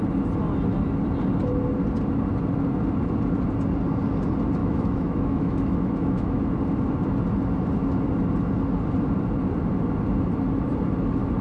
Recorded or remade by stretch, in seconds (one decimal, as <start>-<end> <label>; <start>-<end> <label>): 0.0-4.6 recorded; 4.6-6.4 remade; 6.4-11.4 recorded